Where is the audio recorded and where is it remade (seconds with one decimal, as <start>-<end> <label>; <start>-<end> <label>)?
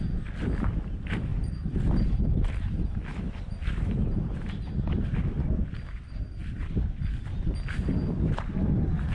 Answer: 0.0-1.3 recorded; 1.3-2.0 remade; 2.0-3.1 recorded; 3.1-4.2 remade; 4.2-6.4 recorded; 6.4-7.4 remade; 7.4-9.1 recorded